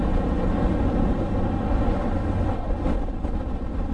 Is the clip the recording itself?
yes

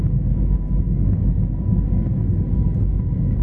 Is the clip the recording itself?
no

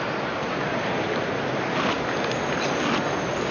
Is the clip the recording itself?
yes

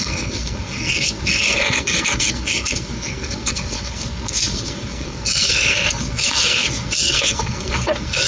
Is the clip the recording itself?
no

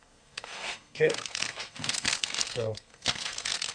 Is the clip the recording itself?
no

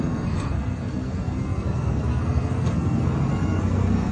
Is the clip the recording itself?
no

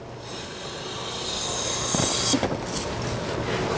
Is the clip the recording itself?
yes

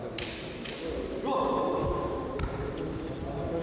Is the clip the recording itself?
yes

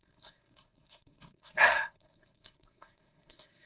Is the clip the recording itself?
no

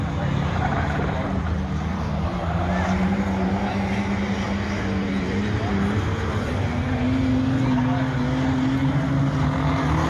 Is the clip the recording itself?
yes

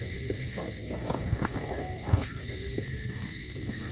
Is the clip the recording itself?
no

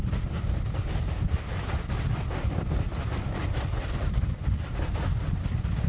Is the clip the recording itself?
yes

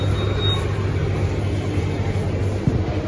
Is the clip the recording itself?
yes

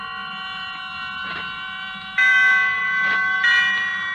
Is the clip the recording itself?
yes